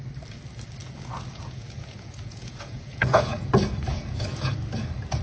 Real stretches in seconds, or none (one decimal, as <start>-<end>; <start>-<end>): 0.0-0.8; 3.5-3.9; 4.5-5.2

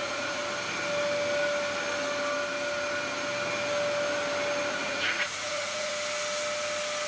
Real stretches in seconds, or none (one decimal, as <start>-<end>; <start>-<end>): 0.4-4.7; 5.9-7.1